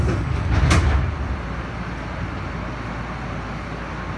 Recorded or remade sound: recorded